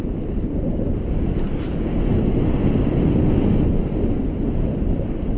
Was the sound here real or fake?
real